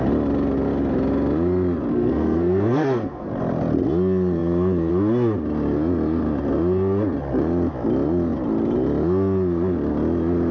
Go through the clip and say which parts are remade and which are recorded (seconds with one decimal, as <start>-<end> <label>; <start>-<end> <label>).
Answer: 0.0-1.9 recorded; 1.9-3.3 remade; 3.3-10.5 recorded